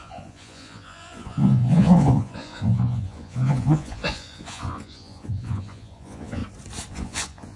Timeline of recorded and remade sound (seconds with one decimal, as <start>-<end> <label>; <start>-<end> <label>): 0.0-6.4 remade; 6.4-6.9 recorded; 6.9-7.6 remade